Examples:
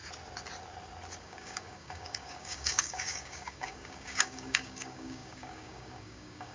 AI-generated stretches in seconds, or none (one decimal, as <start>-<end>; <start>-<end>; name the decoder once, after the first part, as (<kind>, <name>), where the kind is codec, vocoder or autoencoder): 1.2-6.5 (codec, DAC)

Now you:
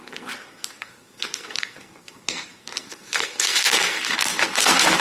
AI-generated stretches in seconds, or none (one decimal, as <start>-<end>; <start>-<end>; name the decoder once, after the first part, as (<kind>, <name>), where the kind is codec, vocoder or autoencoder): 0.0-5.0 (codec, SNAC)

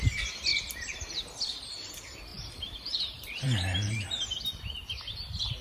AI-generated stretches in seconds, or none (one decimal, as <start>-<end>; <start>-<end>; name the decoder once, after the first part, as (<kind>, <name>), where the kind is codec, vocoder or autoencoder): 0.5-1.9 (vocoder, BigVGAN v2); 2.3-4.4

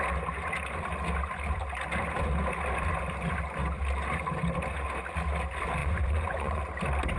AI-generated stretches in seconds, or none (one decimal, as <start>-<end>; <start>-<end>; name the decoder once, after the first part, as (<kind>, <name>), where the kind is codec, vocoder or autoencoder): 5.8-6.6 (vocoder, Vocos)

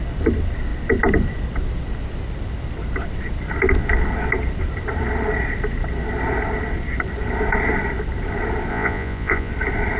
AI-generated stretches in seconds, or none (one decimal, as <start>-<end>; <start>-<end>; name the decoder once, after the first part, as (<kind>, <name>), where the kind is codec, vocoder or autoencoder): 8.7-9.5 (vocoder, Vocos)

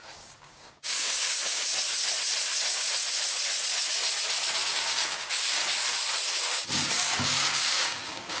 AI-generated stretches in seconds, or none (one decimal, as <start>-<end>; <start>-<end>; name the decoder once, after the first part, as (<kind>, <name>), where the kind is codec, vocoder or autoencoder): 0.0-1.7 (codec, DAC); 4.7-5.6; 6.4-8.4

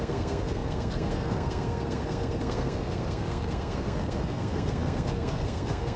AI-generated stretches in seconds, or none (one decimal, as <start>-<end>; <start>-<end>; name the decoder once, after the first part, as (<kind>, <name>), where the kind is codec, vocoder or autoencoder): 0.0-6.0 (codec, SNAC)